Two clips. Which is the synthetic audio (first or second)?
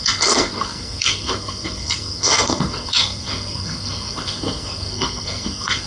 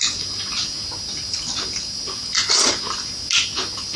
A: first